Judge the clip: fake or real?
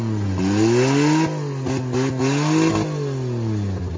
real